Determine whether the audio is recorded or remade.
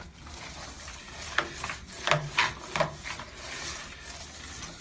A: recorded